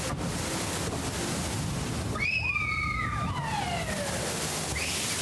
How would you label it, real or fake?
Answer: real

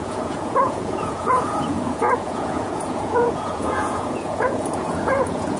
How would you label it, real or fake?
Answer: fake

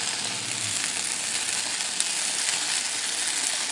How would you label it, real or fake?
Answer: real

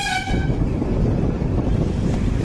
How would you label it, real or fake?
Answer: real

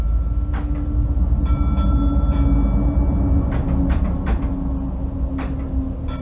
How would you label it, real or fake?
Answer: real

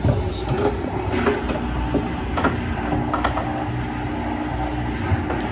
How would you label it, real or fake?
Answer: real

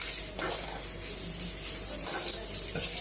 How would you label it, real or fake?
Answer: real